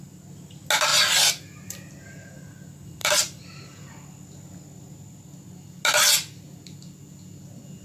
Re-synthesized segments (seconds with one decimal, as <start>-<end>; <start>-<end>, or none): 0.9-1.9; 3.0-3.9